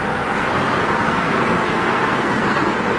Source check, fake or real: fake